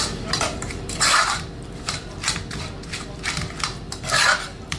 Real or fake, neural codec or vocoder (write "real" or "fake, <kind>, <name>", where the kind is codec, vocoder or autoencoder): fake, vocoder, BigVGAN v2